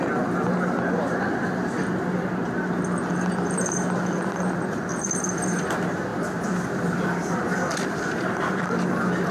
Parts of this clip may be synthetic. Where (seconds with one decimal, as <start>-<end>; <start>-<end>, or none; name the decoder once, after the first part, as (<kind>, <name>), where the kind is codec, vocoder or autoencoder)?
4.9-5.6 (vocoder, BigVGAN v2); 6.1-8.6